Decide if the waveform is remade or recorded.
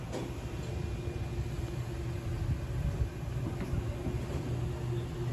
recorded